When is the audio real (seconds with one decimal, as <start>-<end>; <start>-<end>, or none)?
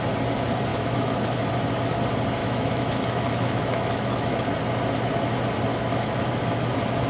0.0-0.7; 1.5-2.4; 4.5-5.7; 6.3-7.1